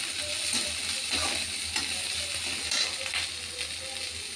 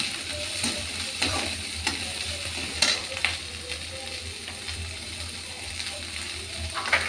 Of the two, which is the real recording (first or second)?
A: first